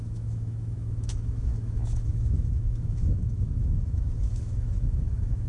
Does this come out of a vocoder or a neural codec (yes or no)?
yes